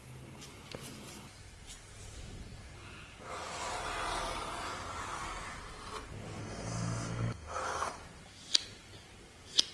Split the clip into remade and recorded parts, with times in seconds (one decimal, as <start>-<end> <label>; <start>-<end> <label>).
0.0-6.4 recorded; 6.4-8.0 remade; 8.0-9.7 recorded